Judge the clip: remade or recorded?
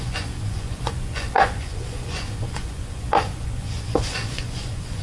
remade